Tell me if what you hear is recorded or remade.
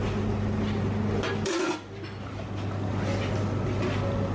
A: recorded